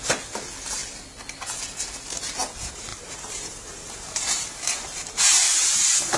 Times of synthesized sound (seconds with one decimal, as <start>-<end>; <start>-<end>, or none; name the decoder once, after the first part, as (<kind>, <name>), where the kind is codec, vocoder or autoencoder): 2.9-6.2 (vocoder, BigVGAN v2)